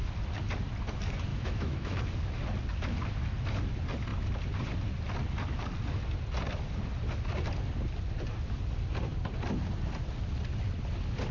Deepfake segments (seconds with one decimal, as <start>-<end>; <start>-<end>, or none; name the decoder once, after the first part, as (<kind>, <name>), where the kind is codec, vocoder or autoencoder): 1.3-2.0 (autoencoder, DAC-VAE)